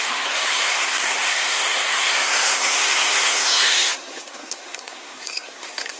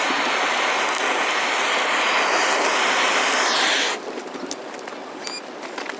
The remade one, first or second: first